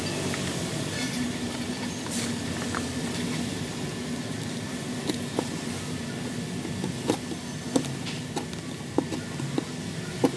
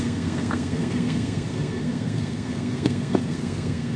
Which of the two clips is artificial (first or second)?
second